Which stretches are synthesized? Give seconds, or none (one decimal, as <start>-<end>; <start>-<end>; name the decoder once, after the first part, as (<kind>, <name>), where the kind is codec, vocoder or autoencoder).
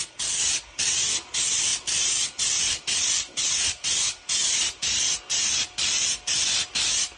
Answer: 1.7-5.2 (vocoder, BigVGAN v2)